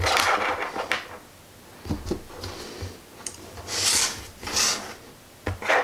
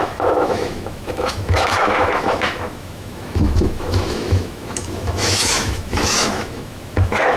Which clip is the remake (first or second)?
second